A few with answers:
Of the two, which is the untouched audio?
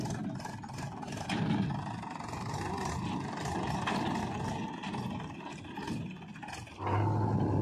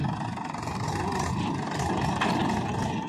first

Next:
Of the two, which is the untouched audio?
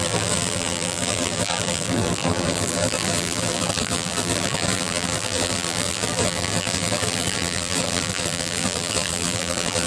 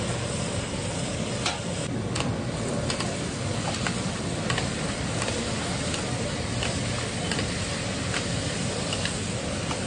second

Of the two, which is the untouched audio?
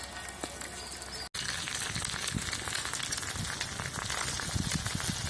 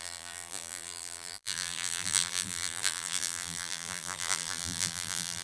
first